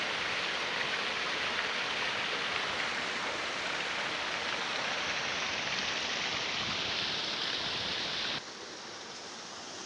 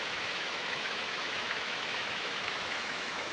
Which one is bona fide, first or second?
first